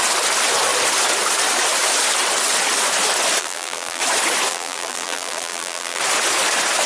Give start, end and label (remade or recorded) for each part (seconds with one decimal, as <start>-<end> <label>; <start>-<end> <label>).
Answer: 0.0-3.4 recorded; 3.4-4.0 remade; 4.0-4.5 recorded; 4.5-6.0 remade; 6.0-6.9 recorded